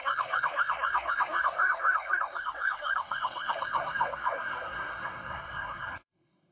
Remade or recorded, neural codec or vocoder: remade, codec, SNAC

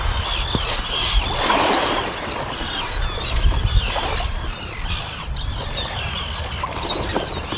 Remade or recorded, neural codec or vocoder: recorded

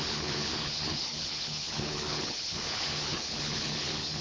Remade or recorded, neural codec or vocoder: remade, codec, HILCodec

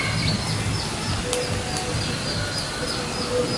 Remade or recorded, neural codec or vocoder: recorded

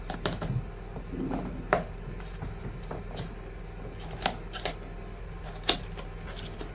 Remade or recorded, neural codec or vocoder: recorded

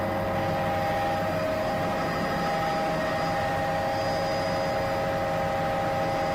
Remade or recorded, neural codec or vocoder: recorded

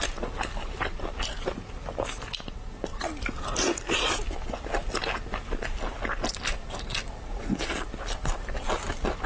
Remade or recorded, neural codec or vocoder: recorded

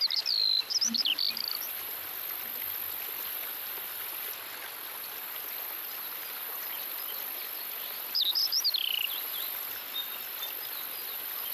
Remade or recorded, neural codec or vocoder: recorded